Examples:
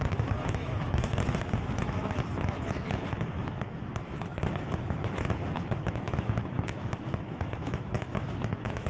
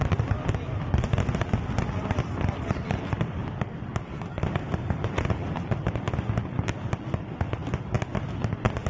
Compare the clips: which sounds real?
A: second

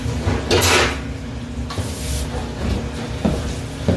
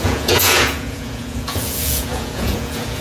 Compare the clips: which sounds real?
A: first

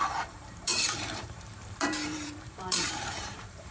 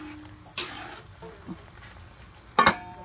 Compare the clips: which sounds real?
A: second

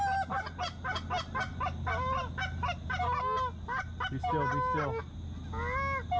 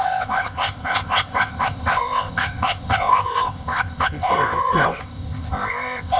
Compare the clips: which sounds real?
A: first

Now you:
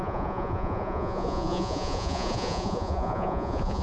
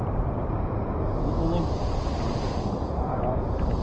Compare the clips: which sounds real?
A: second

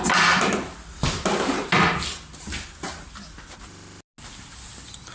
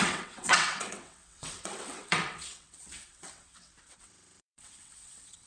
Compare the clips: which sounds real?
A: first